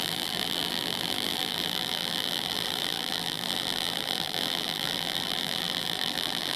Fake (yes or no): yes